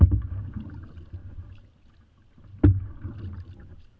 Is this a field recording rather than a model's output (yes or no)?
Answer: yes